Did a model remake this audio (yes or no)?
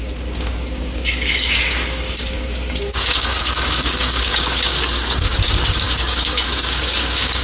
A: yes